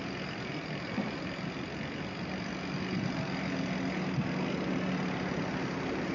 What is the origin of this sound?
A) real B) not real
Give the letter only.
A